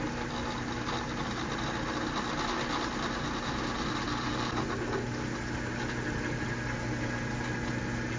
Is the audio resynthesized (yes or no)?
no